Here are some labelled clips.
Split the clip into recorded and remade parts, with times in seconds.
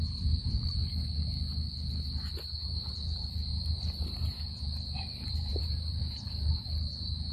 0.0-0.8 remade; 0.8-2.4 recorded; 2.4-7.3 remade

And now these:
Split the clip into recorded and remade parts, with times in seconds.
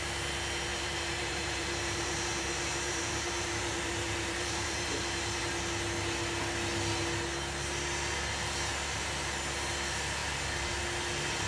0.0-0.7 recorded; 0.7-5.5 remade; 5.5-11.5 recorded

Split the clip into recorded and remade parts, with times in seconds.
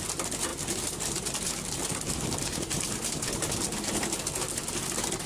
0.0-5.3 recorded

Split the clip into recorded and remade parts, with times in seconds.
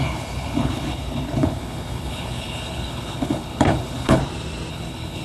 0.0-4.2 remade; 4.2-4.7 recorded; 4.7-5.2 remade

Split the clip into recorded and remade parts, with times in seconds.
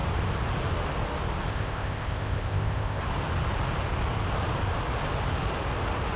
0.0-1.5 recorded; 1.5-3.0 remade; 3.0-6.2 recorded